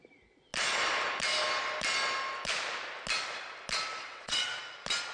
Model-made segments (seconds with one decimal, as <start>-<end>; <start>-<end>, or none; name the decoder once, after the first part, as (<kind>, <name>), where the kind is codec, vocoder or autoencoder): 4.0-4.6 (vocoder, WaveNeXt)